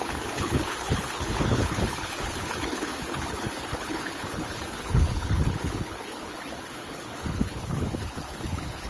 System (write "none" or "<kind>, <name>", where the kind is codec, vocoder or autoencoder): codec, HILCodec